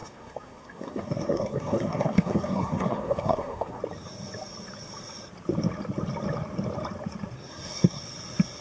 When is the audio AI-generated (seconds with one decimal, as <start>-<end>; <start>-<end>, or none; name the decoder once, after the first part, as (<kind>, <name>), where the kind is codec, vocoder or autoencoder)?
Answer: 0.0-3.8 (codec, SNAC); 7.5-8.0